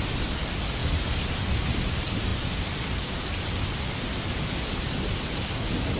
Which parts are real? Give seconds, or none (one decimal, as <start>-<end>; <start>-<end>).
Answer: 0.0-6.0